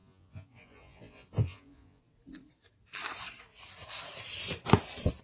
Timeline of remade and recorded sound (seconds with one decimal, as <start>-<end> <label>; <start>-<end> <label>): 0.0-2.0 remade; 2.0-5.2 recorded